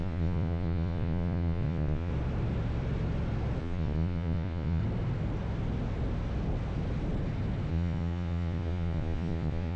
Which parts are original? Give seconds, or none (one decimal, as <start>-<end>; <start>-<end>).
2.1-3.6; 4.8-7.7